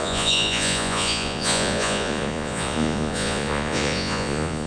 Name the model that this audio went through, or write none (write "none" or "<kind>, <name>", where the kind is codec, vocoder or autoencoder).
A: vocoder, Vocos